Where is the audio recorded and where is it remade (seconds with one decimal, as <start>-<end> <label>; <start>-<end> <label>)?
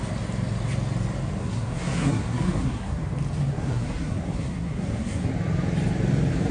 0.0-1.4 recorded; 1.4-3.0 remade; 3.0-3.4 recorded; 3.4-5.3 remade; 5.3-6.5 recorded